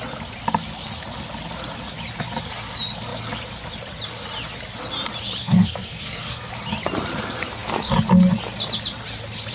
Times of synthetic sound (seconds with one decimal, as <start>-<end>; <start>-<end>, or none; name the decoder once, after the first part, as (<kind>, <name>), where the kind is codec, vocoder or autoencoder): 5.4-6.5 (codec, SNAC)